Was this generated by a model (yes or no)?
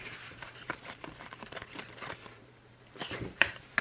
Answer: yes